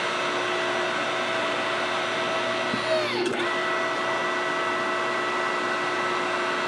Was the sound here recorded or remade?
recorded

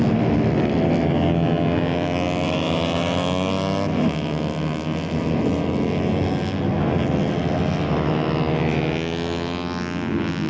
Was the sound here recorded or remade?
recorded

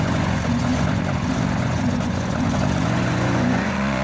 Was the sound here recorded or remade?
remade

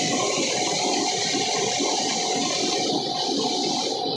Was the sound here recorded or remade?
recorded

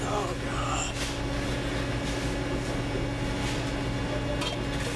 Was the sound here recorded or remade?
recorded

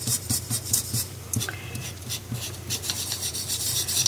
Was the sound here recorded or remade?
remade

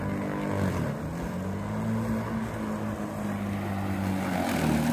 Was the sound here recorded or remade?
recorded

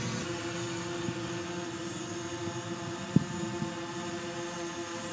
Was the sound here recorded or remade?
recorded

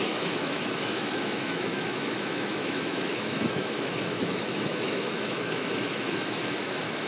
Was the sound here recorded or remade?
remade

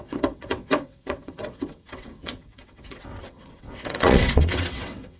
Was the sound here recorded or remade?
remade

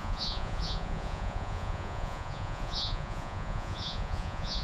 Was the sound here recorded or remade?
remade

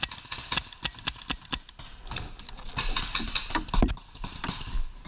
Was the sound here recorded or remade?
recorded